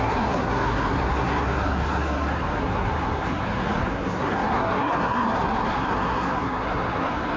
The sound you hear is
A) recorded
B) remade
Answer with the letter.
B